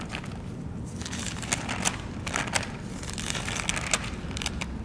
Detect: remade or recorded recorded